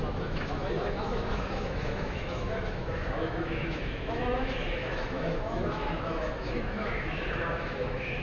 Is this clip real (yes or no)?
no